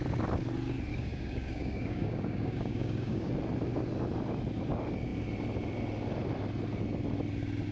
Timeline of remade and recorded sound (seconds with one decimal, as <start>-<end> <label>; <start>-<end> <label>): 0.0-0.9 recorded; 0.9-3.3 remade; 3.3-7.7 recorded